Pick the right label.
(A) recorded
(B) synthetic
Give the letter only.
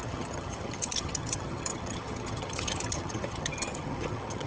B